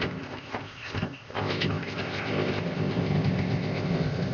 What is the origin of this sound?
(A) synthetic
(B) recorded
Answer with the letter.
A